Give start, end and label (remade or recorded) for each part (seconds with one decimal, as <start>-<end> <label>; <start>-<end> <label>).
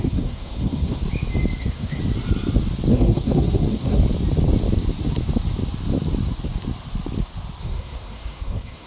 0.0-1.0 remade; 1.0-1.6 recorded; 1.6-2.0 remade; 2.0-2.9 recorded; 2.9-4.0 remade; 4.0-7.6 recorded; 7.6-8.9 remade